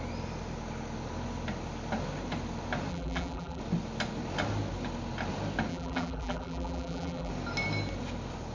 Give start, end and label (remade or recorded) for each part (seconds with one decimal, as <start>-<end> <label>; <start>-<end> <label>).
0.0-2.9 recorded; 2.9-3.6 remade; 3.6-5.7 recorded; 5.7-7.3 remade; 7.3-8.5 recorded